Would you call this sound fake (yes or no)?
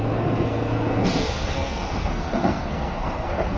yes